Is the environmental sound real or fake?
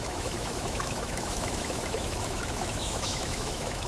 fake